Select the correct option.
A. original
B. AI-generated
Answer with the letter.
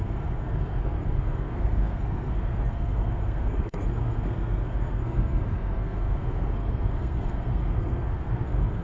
B